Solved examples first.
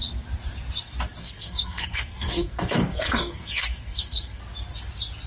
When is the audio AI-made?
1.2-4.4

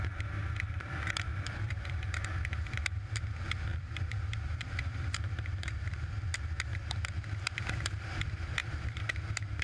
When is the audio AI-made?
1.3-2.8; 3.7-5.9; 8.6-9.2